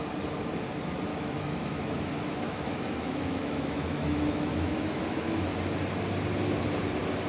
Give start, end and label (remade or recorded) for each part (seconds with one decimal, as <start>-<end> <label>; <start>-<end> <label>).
0.0-1.1 recorded; 1.1-5.5 remade; 5.5-7.3 recorded